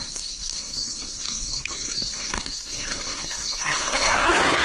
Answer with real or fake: fake